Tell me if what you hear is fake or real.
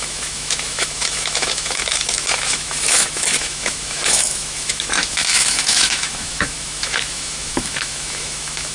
fake